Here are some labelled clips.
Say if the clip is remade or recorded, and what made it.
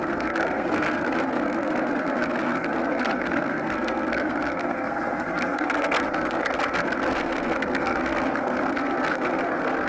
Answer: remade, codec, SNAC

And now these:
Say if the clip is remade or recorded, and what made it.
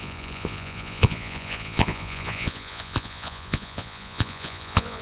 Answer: remade, vocoder, Vocos